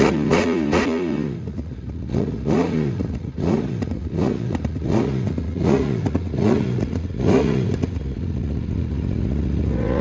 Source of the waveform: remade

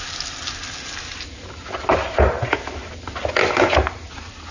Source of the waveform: recorded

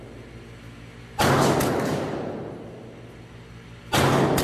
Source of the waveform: recorded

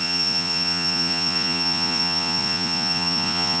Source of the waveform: remade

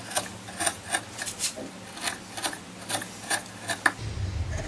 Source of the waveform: recorded